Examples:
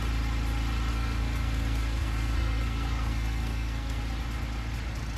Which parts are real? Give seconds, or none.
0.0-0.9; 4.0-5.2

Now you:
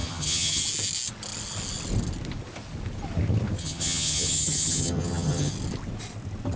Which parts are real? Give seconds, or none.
0.6-3.6; 5.5-6.6

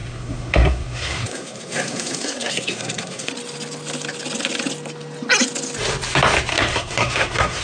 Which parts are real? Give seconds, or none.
3.3-6.5

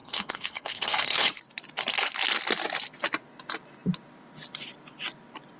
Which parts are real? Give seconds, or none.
1.4-5.6

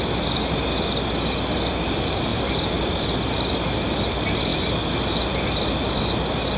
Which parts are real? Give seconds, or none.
0.0-6.6

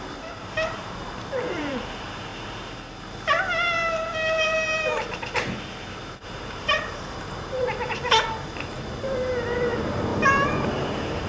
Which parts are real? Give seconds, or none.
2.3-6.2